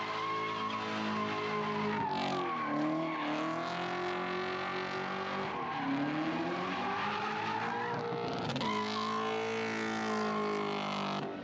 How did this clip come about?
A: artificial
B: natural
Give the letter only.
B